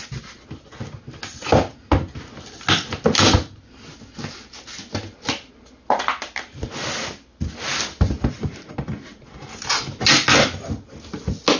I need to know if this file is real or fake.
real